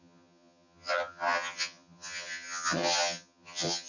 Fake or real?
fake